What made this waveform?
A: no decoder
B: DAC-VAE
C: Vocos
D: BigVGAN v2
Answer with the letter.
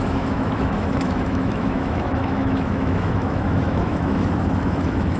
B